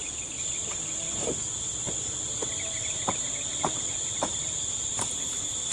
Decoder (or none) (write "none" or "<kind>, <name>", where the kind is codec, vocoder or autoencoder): none